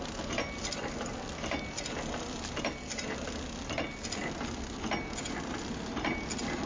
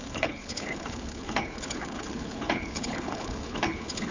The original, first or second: first